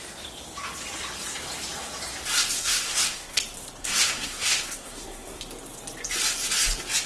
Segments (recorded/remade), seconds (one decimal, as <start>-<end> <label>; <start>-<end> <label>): 0.0-2.6 recorded; 2.6-3.4 remade; 3.4-3.8 recorded; 3.8-5.4 remade; 5.4-7.1 recorded